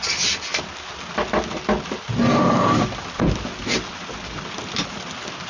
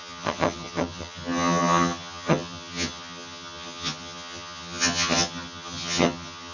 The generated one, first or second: second